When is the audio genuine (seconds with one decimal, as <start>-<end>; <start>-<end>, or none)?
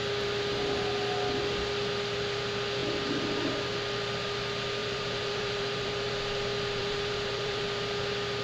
0.0-4.8; 6.1-6.8; 7.6-8.4